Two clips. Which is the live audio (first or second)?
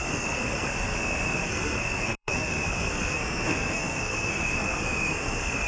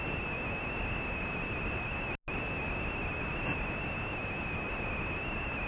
second